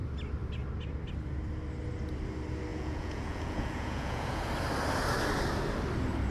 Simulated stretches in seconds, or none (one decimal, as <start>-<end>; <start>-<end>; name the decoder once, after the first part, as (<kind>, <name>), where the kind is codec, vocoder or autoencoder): 2.7-4.5 (vocoder, Vocos)